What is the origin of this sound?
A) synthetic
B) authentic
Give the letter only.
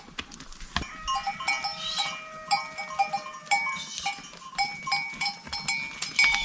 B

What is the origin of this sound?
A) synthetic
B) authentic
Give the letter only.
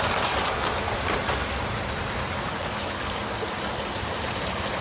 B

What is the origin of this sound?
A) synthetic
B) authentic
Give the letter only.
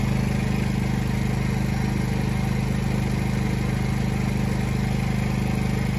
B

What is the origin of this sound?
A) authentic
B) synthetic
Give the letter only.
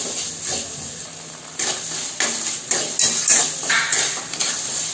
A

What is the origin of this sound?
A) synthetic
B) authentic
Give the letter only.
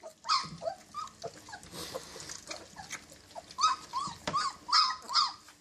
B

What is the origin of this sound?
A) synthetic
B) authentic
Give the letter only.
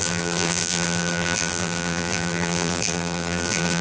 A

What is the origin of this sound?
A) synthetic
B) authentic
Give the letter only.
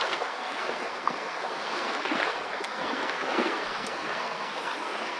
A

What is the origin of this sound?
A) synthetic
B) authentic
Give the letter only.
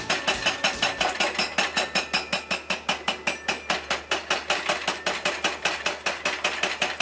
B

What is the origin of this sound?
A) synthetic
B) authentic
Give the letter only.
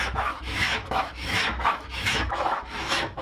A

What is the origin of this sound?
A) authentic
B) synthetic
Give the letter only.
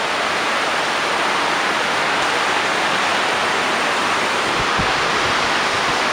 A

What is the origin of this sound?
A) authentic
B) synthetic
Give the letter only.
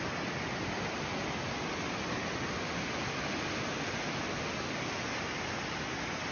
A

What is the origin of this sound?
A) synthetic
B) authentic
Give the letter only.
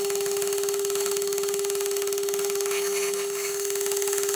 A